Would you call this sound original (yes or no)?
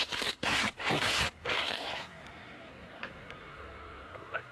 no